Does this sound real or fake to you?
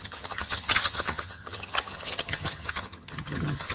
fake